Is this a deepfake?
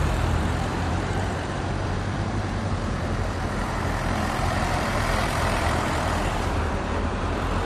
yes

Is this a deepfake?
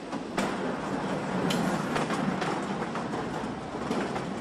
no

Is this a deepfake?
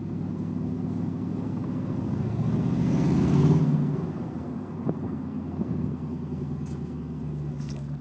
yes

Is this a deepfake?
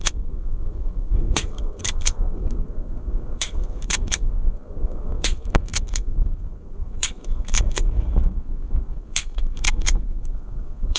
yes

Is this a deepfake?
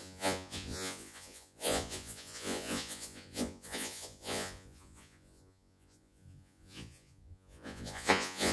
yes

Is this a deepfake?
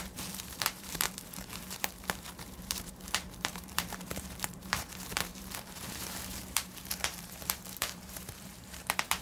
yes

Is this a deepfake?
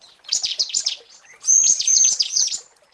yes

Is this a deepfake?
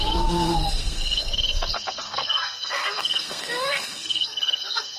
yes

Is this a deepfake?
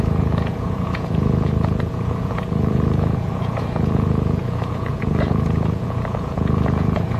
yes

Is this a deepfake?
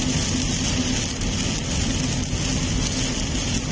no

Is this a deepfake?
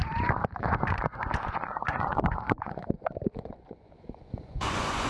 yes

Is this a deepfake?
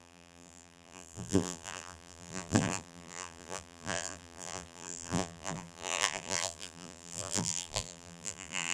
yes